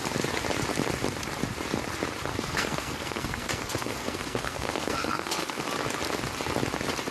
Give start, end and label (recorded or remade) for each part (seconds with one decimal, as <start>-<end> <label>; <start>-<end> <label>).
0.0-2.3 recorded; 2.3-5.6 remade; 5.6-7.1 recorded